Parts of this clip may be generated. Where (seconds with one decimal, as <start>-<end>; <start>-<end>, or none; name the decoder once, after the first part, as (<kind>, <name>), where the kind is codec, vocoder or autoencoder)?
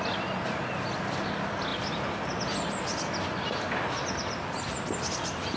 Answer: none